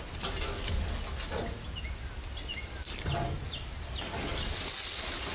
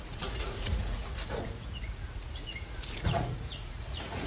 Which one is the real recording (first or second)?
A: first